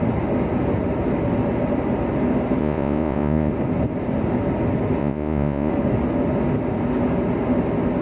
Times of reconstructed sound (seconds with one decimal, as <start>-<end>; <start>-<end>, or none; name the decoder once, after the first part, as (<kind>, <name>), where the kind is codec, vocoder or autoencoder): 2.6-3.5 (vocoder, Vocos); 5.0-5.7